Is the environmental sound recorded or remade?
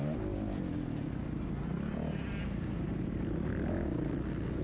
recorded